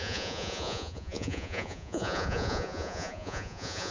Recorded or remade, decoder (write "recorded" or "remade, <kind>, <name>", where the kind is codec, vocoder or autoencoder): remade, vocoder, Vocos